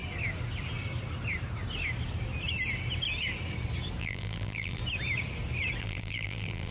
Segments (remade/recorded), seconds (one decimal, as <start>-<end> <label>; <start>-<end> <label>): 0.0-4.0 recorded; 4.0-4.8 remade; 4.8-5.8 recorded; 5.8-6.7 remade